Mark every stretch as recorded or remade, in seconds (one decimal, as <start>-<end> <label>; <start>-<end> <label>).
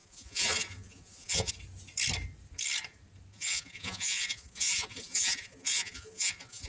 0.0-1.5 remade; 1.5-3.3 recorded; 3.3-6.7 remade